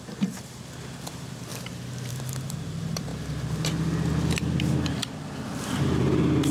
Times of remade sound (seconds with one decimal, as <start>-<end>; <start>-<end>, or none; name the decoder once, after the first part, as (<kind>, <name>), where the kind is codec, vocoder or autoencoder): 0.0-1.5 (vocoder, BigVGAN v2); 2.1-3.1; 5.8-6.5